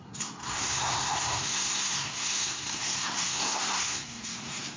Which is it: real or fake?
fake